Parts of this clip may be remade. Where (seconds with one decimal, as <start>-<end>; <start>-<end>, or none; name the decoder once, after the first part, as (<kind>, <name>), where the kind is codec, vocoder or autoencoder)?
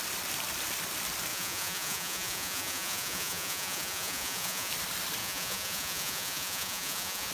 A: 1.3-4.7 (vocoder, Vocos); 5.2-7.3